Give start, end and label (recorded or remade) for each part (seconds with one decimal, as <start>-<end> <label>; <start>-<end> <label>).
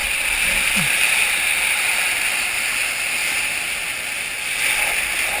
0.0-1.1 remade; 1.1-5.4 recorded